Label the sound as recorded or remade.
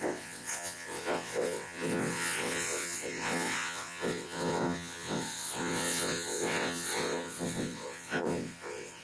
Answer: remade